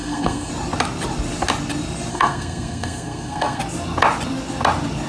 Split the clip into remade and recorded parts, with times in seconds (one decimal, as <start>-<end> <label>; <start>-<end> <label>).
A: 0.0-0.5 remade; 0.5-2.1 recorded; 2.1-3.6 remade; 3.6-5.1 recorded